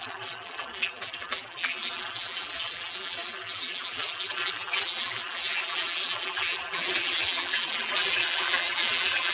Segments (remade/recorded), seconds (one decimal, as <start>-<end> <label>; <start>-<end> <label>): 0.0-9.3 remade

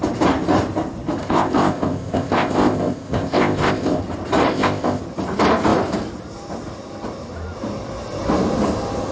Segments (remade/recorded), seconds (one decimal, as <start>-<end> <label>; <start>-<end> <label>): 0.0-1.2 recorded; 1.2-4.0 remade; 4.0-4.5 recorded; 4.5-5.0 remade; 5.0-9.1 recorded

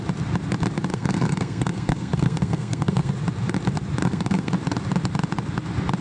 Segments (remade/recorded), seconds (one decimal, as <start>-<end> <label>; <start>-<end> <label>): 0.0-0.9 recorded; 0.9-3.1 remade; 3.1-4.0 recorded; 4.0-4.5 remade; 4.5-6.0 recorded

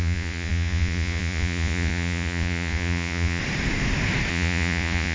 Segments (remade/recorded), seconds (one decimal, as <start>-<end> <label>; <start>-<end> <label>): 0.0-3.4 remade; 3.4-4.3 recorded; 4.3-5.1 remade

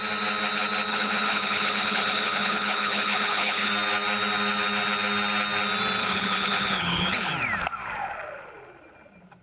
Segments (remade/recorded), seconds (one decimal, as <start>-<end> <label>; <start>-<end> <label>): 0.0-0.9 recorded; 0.9-3.7 remade; 3.7-6.0 recorded; 6.0-7.3 remade; 7.3-9.4 recorded

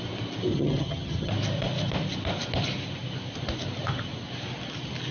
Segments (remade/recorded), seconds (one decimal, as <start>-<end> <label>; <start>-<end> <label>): 0.0-0.5 recorded; 0.5-1.3 remade; 1.3-5.1 recorded